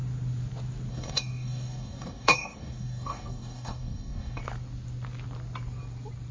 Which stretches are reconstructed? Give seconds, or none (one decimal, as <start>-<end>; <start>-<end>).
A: 0.9-4.4